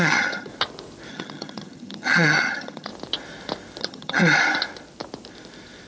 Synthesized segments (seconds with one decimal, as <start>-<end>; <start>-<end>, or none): 0.0-0.5; 1.1-2.9; 3.8-4.2